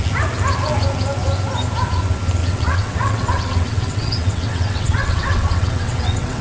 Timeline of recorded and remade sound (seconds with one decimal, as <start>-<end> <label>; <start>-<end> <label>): 0.0-2.4 recorded; 2.4-6.4 remade